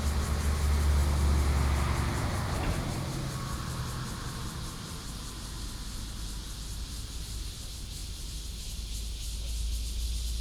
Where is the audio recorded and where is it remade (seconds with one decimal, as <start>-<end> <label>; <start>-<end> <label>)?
0.0-10.4 recorded